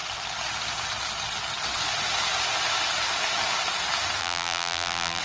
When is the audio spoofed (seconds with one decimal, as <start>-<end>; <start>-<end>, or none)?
4.2-5.2